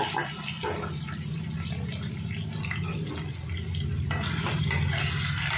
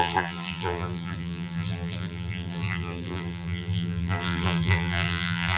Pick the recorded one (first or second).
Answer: first